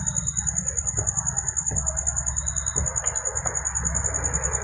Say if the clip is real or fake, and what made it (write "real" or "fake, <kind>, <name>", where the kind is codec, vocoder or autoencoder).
real